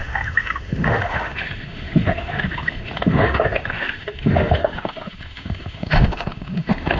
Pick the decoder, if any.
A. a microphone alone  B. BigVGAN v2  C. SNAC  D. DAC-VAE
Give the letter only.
D